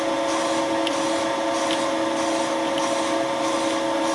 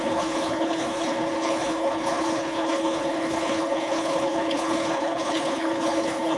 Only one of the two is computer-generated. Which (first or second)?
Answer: second